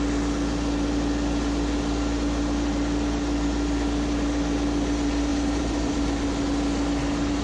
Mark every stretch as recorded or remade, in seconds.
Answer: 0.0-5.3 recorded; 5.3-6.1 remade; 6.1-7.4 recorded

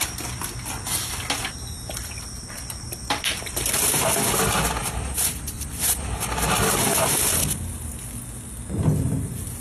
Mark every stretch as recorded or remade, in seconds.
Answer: 0.0-4.8 recorded; 4.8-6.2 remade; 6.2-9.6 recorded

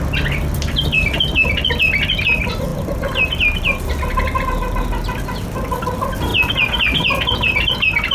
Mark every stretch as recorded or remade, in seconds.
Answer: 0.0-8.1 recorded

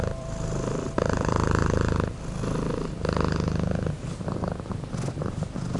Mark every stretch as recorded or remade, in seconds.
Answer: 0.0-1.6 remade; 1.6-5.1 recorded; 5.1-5.8 remade